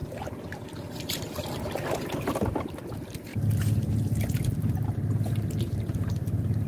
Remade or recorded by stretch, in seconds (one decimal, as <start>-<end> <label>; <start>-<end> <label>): 0.0-6.7 recorded